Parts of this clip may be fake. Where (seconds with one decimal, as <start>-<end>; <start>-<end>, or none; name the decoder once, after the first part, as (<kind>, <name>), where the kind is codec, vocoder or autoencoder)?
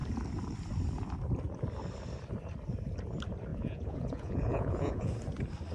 3.5-5.1 (vocoder, Vocos)